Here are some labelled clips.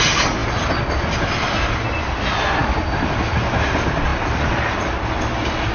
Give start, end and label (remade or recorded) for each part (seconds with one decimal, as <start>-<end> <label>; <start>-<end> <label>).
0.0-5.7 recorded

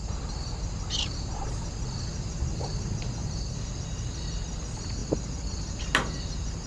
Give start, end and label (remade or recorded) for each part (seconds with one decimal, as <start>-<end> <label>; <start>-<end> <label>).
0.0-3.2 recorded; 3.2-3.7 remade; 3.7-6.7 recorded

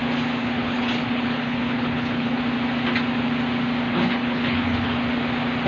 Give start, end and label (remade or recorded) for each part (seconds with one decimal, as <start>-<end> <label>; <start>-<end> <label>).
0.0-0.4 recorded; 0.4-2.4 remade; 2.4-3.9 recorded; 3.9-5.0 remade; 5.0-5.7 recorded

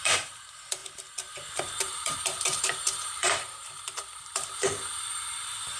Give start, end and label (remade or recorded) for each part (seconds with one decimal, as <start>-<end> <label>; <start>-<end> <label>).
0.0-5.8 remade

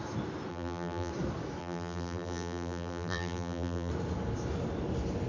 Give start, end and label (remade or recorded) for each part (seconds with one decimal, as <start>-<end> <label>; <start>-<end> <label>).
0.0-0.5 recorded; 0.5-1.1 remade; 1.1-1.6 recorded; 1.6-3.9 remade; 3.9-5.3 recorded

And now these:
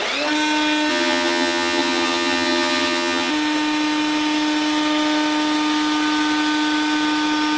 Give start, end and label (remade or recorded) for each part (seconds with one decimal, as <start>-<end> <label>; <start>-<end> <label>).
0.0-0.9 recorded; 0.9-3.3 remade; 3.3-7.6 recorded

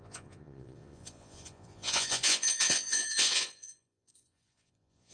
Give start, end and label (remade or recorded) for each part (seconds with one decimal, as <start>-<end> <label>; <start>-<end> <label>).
0.0-5.1 remade